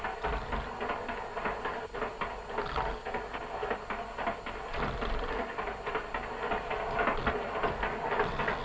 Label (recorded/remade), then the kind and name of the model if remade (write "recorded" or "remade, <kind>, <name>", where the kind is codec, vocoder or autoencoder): recorded